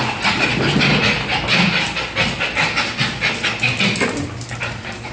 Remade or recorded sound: recorded